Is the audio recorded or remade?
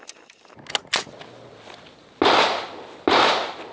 recorded